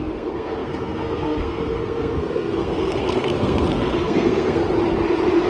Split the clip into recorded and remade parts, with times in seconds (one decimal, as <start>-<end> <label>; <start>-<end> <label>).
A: 0.0-4.6 remade; 4.6-5.5 recorded